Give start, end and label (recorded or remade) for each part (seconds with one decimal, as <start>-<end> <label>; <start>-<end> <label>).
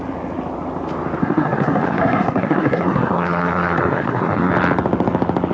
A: 0.0-1.2 recorded; 1.2-4.5 remade; 4.5-5.5 recorded